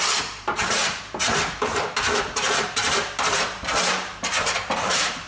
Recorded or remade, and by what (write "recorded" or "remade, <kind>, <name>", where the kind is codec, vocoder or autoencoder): remade, vocoder, BigVGAN v2